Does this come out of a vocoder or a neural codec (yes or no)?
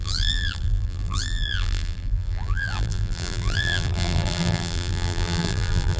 yes